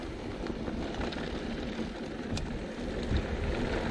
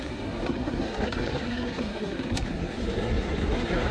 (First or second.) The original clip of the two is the first